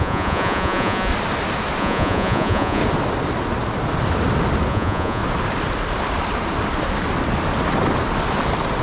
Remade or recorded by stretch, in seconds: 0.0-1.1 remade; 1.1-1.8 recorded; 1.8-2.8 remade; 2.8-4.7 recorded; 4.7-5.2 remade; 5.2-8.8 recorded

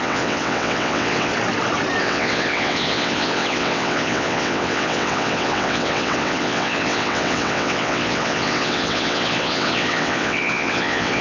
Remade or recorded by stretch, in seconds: 0.0-1.3 remade; 1.3-2.0 recorded; 2.0-11.2 remade

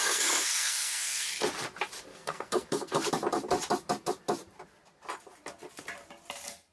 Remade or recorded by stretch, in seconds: 0.0-1.3 remade; 1.3-2.1 recorded; 2.1-3.1 remade; 3.1-6.7 recorded

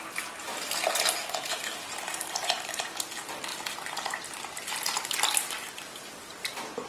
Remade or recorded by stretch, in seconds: 0.0-6.9 recorded

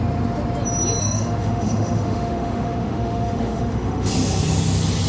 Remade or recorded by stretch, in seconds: 0.0-1.0 recorded; 1.0-4.1 remade; 4.1-5.1 recorded

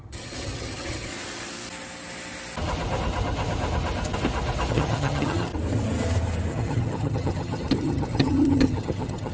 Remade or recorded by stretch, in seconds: 0.0-1.1 remade; 1.1-4.7 recorded; 4.7-5.5 remade; 5.5-6.5 recorded; 6.5-9.3 remade

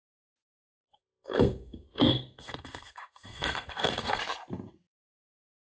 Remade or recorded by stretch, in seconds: 0.0-0.8 recorded; 0.8-4.2 remade; 4.2-5.6 recorded

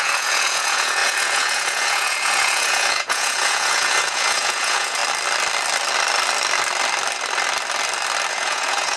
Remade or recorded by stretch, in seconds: 0.0-5.0 remade; 5.0-8.3 recorded; 8.3-9.0 remade